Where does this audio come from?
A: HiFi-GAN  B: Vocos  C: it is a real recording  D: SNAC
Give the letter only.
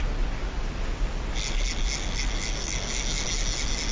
C